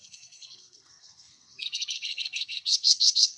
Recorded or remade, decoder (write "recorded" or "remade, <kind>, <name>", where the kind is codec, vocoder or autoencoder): remade, codec, SNAC